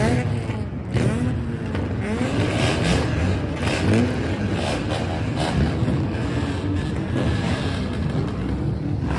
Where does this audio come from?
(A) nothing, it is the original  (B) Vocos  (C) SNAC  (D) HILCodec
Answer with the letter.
A